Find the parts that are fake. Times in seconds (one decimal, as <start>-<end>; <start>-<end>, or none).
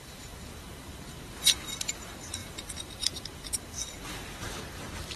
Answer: 0.0-5.2